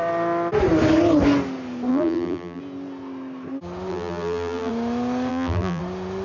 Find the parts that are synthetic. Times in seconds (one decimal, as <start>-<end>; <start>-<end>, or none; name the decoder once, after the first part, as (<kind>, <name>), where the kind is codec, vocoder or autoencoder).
1.9-2.6 (vocoder, BigVGAN v2); 3.9-4.7; 5.3-5.8